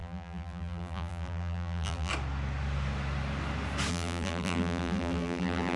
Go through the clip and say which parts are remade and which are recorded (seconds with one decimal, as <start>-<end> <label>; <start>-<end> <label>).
0.0-2.1 remade; 2.1-3.9 recorded; 3.9-5.8 remade

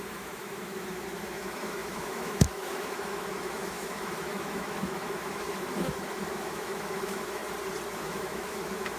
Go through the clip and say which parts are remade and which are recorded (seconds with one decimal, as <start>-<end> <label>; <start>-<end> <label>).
0.0-7.4 remade; 7.4-7.9 recorded; 7.9-9.0 remade

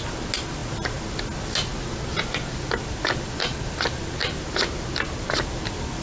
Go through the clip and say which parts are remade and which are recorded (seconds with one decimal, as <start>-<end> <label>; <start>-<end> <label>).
0.0-6.0 recorded